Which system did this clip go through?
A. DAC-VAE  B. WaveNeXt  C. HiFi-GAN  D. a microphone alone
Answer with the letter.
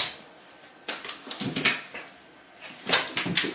D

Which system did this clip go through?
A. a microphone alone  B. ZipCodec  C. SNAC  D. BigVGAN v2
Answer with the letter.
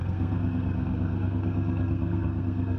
C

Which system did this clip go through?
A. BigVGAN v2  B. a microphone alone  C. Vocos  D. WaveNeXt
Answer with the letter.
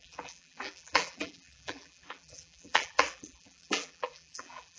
A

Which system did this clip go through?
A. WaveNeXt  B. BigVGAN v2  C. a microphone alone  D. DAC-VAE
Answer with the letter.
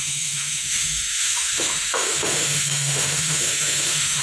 D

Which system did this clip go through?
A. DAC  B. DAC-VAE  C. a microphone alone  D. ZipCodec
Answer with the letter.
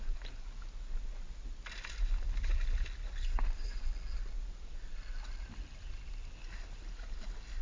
C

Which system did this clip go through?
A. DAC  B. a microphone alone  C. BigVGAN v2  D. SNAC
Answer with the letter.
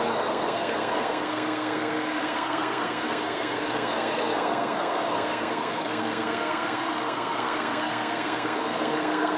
D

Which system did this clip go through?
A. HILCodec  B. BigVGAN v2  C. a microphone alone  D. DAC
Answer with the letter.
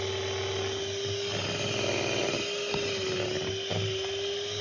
C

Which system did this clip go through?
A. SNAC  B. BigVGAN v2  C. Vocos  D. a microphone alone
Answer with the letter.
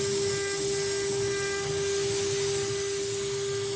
D